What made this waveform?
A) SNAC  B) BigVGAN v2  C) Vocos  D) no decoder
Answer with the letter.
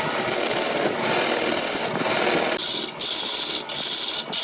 D